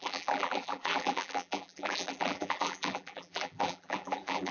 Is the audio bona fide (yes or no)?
no